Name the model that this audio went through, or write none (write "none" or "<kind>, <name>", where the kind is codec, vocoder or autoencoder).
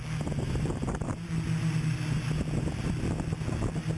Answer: none